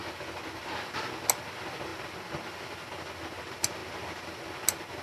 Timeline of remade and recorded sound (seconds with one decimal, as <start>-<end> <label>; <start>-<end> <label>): 0.0-5.0 recorded